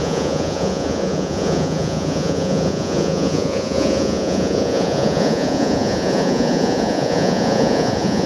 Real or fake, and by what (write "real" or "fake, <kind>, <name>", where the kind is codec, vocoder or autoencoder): fake, vocoder, Vocos